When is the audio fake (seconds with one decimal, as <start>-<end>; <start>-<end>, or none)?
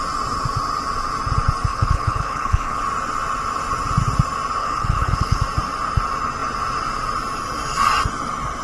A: 1.7-2.8; 4.6-5.4